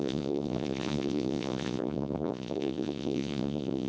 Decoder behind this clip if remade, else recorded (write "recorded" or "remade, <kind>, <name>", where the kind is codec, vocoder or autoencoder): remade, vocoder, Vocos